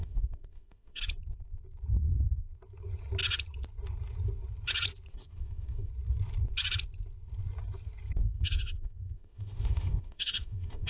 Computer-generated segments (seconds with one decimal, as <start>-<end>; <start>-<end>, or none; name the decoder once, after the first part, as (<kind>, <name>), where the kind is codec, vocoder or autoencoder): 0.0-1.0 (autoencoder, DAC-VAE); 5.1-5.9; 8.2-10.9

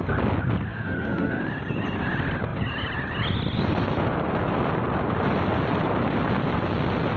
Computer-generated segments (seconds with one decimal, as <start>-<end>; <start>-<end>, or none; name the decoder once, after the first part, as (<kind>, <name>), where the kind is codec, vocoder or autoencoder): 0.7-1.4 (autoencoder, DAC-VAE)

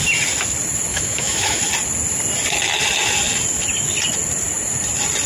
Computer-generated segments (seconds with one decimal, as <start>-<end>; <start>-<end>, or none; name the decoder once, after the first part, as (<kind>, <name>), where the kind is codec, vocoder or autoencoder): 0.9-1.6 (autoencoder, DAC-VAE)

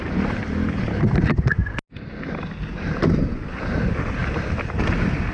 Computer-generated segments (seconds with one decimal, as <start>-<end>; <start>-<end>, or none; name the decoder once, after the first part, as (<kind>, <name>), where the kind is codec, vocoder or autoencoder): none

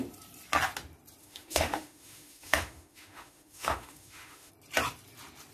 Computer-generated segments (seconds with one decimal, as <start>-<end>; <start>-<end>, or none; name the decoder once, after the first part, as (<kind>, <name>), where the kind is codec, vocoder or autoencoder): 1.2-4.5 (autoencoder, DAC-VAE)